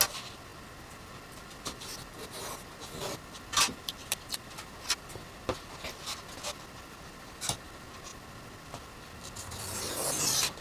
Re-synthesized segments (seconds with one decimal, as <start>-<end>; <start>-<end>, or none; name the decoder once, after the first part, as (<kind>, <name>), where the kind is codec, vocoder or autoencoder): none